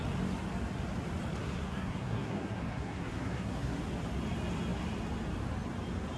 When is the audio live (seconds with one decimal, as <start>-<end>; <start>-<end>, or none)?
0.0-1.4; 3.8-6.2